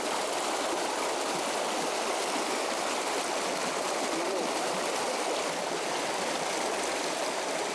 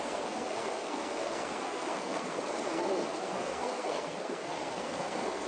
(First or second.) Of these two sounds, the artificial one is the second